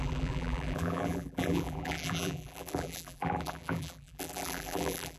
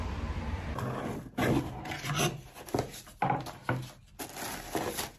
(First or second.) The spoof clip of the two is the first